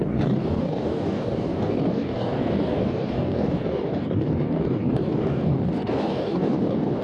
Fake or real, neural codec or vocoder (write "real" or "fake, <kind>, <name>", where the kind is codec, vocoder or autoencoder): fake, codec, DAC